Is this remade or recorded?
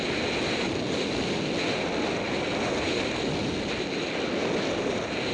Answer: recorded